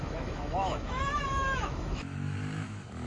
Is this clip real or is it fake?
fake